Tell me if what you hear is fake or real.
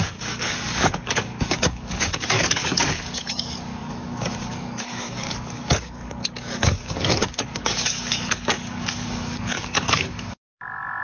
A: fake